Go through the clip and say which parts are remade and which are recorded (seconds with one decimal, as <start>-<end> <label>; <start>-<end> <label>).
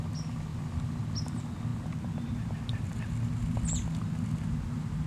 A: 0.0-5.1 recorded